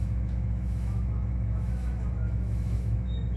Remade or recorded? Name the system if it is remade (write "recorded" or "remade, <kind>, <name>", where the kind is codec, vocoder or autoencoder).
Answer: remade, autoencoder, DAC-VAE